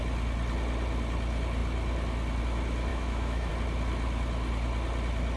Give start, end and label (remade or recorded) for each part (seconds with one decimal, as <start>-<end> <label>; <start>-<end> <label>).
0.0-2.9 recorded; 2.9-3.5 remade; 3.5-5.4 recorded